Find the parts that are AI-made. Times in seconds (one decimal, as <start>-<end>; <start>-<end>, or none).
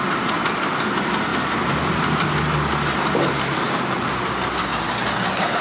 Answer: none